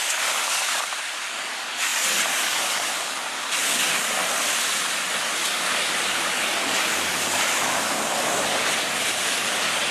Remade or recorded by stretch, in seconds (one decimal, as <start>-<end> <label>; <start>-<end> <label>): 0.0-4.2 remade; 4.2-5.2 recorded; 5.2-9.9 remade